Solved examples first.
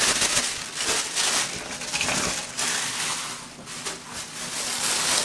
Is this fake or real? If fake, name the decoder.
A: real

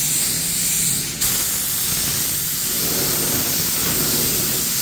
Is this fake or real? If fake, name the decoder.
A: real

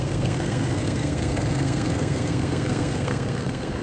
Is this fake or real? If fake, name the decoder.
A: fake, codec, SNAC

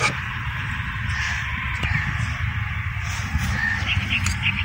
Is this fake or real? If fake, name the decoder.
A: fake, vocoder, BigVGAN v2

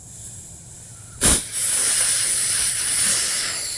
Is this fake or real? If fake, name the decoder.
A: real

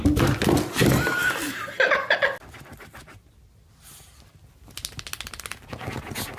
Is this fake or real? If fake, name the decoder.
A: real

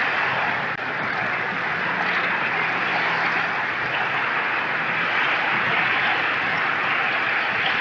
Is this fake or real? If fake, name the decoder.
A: real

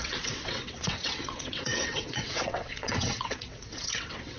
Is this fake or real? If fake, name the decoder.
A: fake, vocoder, WaveNeXt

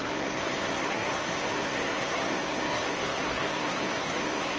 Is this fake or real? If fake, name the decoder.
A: fake, codec, SNAC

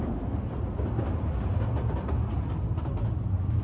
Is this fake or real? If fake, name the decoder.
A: real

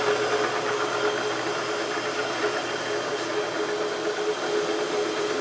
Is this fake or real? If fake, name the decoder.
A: real